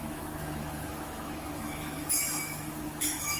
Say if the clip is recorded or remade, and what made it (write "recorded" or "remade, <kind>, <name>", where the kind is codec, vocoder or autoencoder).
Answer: remade, autoencoder, DAC-VAE